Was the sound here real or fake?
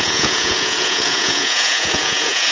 fake